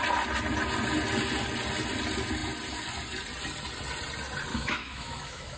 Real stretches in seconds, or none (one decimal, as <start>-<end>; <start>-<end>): 0.0-4.5